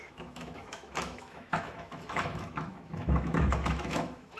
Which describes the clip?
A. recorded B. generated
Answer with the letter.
B